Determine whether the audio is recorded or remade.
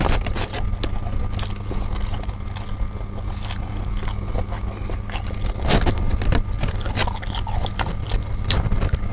recorded